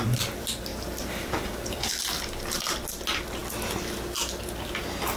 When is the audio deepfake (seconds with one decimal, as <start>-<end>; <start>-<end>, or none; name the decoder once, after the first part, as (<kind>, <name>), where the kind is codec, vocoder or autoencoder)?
0.7-2.0 (vocoder, BigVGAN v2)